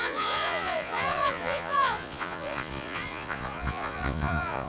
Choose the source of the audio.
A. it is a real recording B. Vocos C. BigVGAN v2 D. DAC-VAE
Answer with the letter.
B